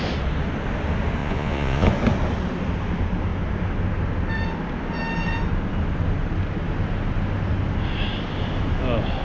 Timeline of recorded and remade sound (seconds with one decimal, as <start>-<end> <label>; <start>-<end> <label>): 0.0-1.2 recorded; 1.2-1.9 remade; 1.9-9.2 recorded